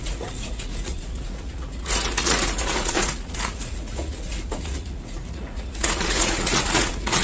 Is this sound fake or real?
fake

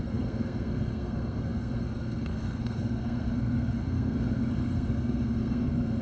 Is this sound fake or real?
fake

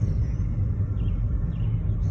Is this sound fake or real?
real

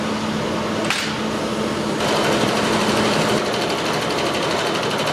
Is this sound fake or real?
real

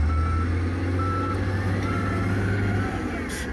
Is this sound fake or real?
real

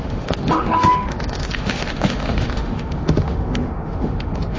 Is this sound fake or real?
fake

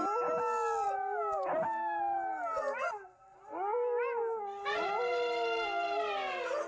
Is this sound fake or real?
real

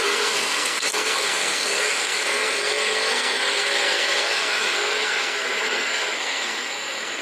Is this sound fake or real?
fake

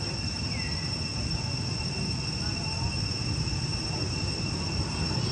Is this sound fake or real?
real